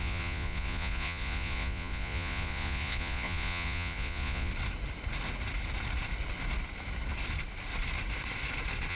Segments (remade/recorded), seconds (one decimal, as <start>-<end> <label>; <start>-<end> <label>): 0.0-4.5 remade; 4.5-8.9 recorded